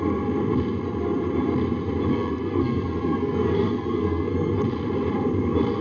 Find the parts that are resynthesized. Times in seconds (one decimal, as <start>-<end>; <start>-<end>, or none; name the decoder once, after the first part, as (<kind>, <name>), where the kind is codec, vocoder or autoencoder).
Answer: 2.1-4.6 (codec, SNAC)